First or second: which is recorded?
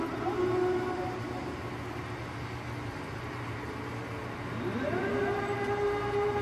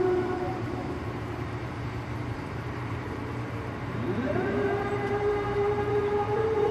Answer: first